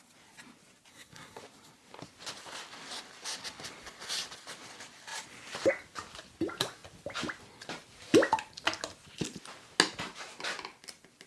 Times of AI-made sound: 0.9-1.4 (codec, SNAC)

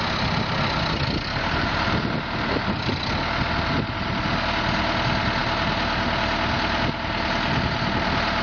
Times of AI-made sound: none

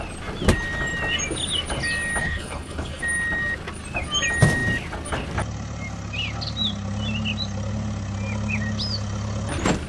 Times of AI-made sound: 2.2-3.0 (codec, HILCodec)

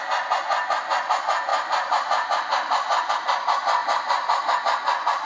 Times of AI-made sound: 1.5-3.1 (vocoder, BigVGAN v2); 3.8-4.5